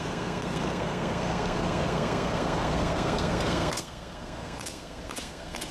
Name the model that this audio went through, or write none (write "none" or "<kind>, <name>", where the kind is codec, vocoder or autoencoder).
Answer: codec, SNAC